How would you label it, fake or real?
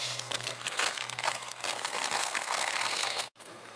fake